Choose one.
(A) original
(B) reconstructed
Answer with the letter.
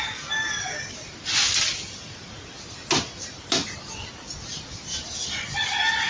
A